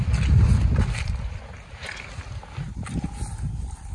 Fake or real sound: real